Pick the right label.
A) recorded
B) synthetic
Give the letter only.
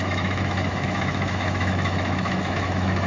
B